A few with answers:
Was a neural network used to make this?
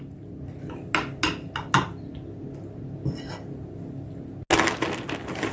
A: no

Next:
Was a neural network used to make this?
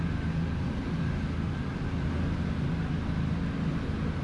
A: no